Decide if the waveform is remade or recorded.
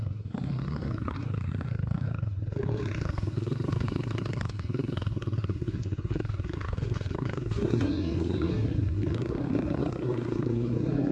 remade